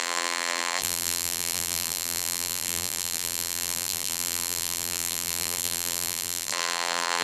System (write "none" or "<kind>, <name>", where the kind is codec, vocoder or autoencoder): vocoder, BigVGAN v2